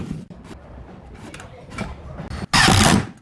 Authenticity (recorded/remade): recorded